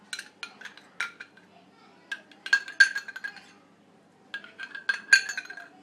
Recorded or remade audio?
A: recorded